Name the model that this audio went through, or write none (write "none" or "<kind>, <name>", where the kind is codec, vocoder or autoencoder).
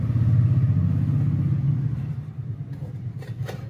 none